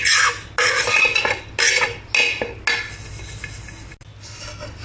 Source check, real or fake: real